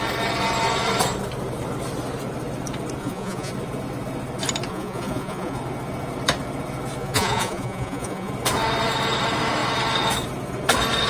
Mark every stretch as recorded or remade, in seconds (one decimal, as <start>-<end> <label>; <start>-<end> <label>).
0.0-3.0 recorded; 3.0-3.5 remade; 3.5-4.7 recorded; 4.7-5.6 remade; 5.6-7.0 recorded; 7.0-8.3 remade; 8.3-11.1 recorded